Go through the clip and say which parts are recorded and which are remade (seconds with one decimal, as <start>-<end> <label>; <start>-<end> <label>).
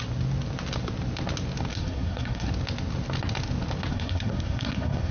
0.0-1.7 recorded; 1.7-2.5 remade; 2.5-3.9 recorded; 3.9-5.1 remade